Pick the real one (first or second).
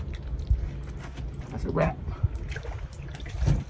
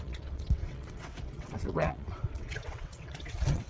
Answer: first